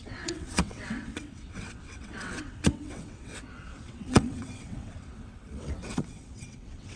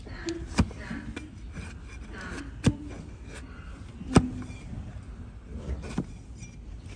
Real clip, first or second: second